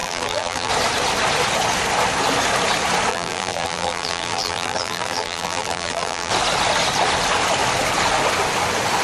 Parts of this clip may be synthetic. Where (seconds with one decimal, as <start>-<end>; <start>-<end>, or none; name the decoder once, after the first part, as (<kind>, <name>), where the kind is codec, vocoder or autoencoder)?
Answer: 0.0-0.7 (vocoder, BigVGAN v2); 3.1-6.3